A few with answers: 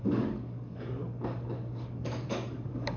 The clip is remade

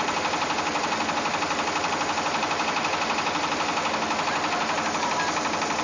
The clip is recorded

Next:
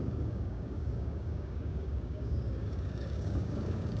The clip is remade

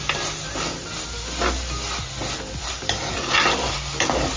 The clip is recorded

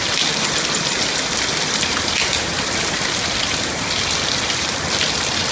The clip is recorded